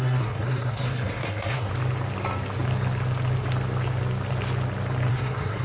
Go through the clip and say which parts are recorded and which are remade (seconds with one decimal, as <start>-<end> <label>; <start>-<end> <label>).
0.0-1.7 remade; 1.7-5.1 recorded; 5.1-5.6 remade